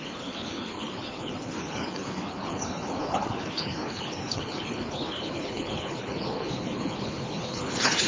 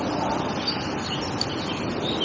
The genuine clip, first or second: second